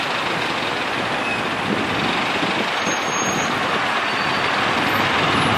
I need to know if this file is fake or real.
real